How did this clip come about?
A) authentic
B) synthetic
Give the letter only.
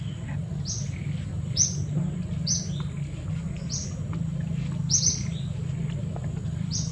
A